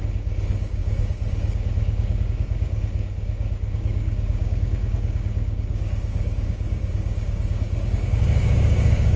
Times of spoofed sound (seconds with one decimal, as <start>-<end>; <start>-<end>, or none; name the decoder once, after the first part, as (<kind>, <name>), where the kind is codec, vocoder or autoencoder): 0.0-9.2 (codec, DAC)

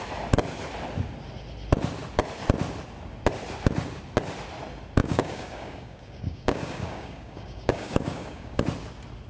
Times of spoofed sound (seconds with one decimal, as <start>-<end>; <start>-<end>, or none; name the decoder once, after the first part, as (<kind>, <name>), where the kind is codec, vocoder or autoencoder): 5.0-8.6 (codec, DAC)